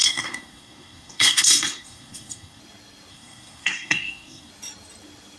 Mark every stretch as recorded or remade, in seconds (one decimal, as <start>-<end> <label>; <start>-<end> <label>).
0.0-2.6 remade; 2.6-3.1 recorded; 3.1-4.5 remade; 4.5-5.4 recorded